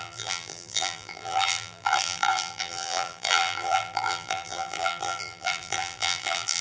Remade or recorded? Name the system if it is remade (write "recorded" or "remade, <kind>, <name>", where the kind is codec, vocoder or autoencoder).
remade, vocoder, BigVGAN v2